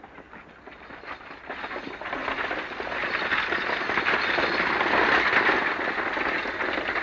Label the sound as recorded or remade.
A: recorded